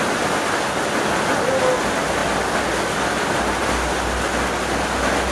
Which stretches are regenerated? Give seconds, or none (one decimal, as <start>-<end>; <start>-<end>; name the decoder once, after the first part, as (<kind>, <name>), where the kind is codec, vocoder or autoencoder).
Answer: none